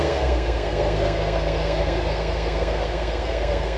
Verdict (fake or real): fake